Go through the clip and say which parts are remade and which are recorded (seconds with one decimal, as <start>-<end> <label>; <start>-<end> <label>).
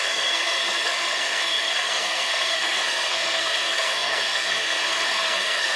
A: 0.0-5.8 remade